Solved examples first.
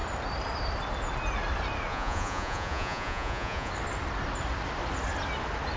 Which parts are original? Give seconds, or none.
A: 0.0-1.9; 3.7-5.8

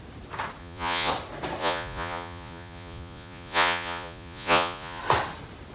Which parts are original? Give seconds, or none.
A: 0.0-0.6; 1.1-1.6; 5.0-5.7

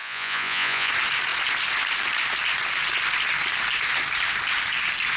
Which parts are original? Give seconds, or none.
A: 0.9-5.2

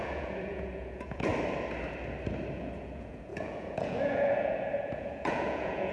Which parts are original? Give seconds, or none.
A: 1.3-2.5

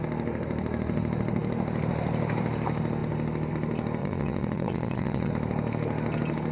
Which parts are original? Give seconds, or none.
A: 0.0-4.0; 5.3-6.5

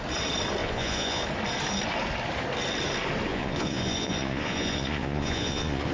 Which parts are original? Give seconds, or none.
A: 0.0-0.6; 1.2-3.3

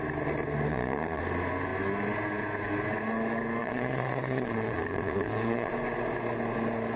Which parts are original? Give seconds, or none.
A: 0.0-0.7; 1.2-3.6; 5.7-7.0

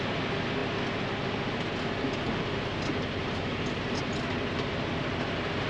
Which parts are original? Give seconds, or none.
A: 0.0-5.7